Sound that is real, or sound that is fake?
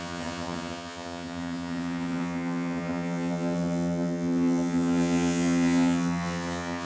fake